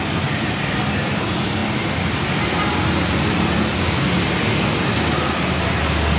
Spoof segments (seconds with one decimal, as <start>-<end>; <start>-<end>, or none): none

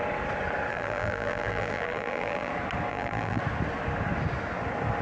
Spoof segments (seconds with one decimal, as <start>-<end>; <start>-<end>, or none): 0.7-2.5; 2.9-3.4